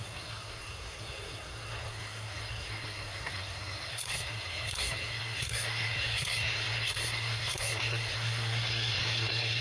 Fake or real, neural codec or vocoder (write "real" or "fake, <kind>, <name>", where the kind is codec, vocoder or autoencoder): fake, codec, SNAC